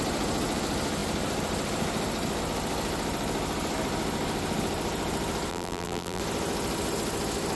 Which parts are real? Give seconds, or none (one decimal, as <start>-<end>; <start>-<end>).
0.0-5.5; 6.2-7.6

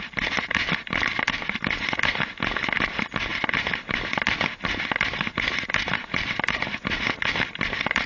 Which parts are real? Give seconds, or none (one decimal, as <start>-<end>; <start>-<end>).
0.0-8.1

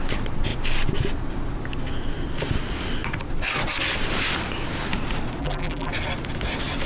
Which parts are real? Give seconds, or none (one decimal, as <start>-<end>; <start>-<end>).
0.0-5.4; 5.9-6.9

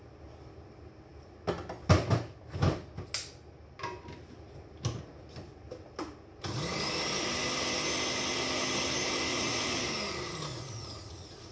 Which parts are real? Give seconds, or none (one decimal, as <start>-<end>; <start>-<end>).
0.0-9.3; 9.8-10.5

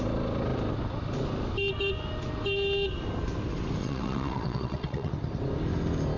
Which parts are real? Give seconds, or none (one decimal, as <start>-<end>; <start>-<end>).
0.0-3.8; 5.1-6.2

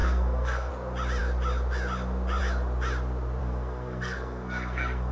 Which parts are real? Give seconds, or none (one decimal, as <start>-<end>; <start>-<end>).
0.7-3.4

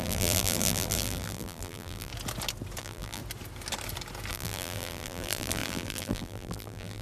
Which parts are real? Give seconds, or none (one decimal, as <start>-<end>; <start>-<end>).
2.1-2.8; 3.2-4.3

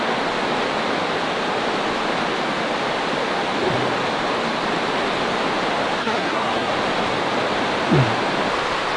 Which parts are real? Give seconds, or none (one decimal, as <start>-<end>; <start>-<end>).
0.0-6.0; 6.7-9.0